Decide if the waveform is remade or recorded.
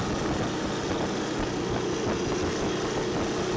recorded